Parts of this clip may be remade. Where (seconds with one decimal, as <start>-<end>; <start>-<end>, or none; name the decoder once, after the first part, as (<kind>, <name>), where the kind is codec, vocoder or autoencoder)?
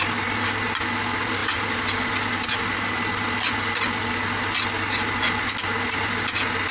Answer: none